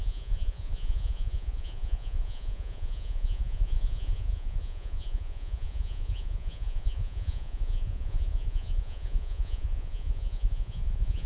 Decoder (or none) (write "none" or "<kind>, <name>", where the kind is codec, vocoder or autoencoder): vocoder, Vocos